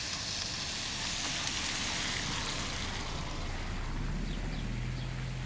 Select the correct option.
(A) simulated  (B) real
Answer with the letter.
B